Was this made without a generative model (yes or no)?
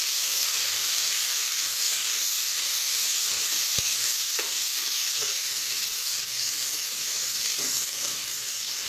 no